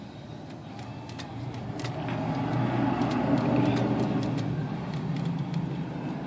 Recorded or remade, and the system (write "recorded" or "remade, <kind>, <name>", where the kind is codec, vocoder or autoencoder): recorded